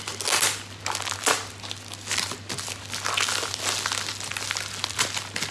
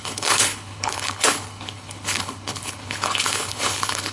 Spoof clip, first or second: second